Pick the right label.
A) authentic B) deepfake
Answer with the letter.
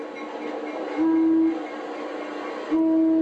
A